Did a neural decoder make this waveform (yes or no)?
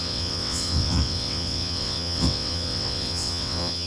yes